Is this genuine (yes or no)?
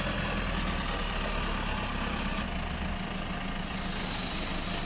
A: yes